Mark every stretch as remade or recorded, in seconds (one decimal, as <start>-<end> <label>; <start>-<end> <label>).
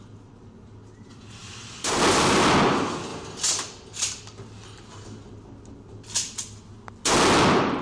0.0-1.4 recorded; 1.4-2.0 remade; 2.0-7.8 recorded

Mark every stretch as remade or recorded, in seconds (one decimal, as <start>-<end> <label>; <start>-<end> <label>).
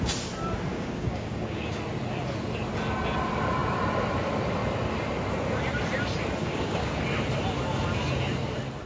0.0-0.7 recorded; 0.7-1.8 remade; 1.8-6.4 recorded; 6.4-6.9 remade; 6.9-8.9 recorded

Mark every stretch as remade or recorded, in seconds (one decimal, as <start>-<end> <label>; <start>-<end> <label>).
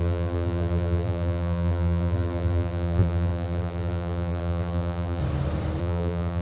0.0-5.2 remade; 5.2-5.8 recorded; 5.8-6.4 remade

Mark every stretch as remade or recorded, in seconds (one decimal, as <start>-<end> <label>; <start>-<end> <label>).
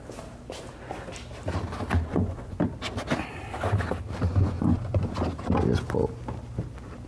0.0-2.1 recorded; 2.1-2.6 remade; 2.6-4.3 recorded; 4.3-5.1 remade; 5.1-7.1 recorded